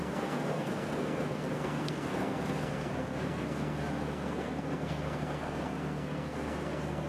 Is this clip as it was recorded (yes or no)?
no